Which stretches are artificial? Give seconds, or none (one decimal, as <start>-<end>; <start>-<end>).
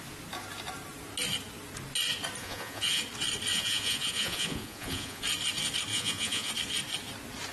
2.4-3.0; 3.5-5.2; 5.9-6.5